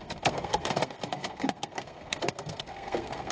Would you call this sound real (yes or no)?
no